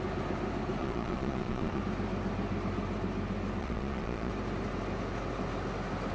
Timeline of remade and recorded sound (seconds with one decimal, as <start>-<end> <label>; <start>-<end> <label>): 0.0-0.8 recorded; 0.8-1.8 remade; 1.8-3.6 recorded; 3.6-4.3 remade; 4.3-6.1 recorded